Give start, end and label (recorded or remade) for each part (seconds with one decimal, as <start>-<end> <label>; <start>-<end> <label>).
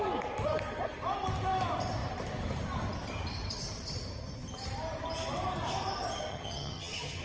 0.0-6.3 recorded; 6.3-7.2 remade